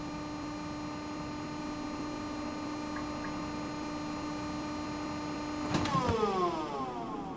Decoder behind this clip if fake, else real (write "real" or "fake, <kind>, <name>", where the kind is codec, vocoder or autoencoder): real